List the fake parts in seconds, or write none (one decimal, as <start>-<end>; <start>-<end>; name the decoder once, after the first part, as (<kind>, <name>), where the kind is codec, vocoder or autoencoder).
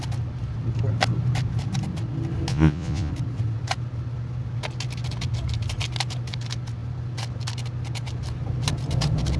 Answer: 2.5-3.1 (vocoder, Vocos)